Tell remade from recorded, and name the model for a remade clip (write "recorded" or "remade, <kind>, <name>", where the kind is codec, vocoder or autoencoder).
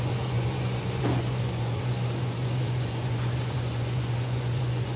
remade, vocoder, Vocos